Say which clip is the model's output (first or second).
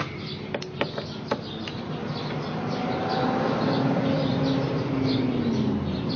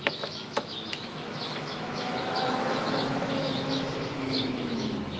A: second